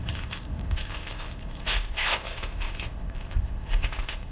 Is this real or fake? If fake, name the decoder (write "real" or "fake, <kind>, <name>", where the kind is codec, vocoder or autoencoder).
fake, codec, ZipCodec